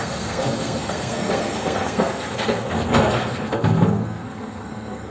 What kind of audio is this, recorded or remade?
remade